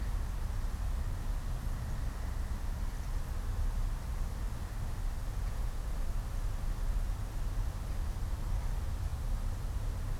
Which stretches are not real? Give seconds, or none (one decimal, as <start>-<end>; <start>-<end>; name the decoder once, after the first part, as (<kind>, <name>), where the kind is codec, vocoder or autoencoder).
5.3-5.8 (vocoder, Vocos)